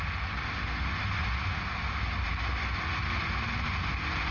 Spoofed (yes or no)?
no